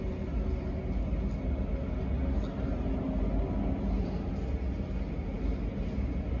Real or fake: real